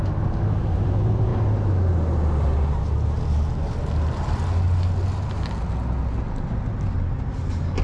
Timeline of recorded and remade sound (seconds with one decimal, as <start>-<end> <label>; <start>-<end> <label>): 0.0-7.8 recorded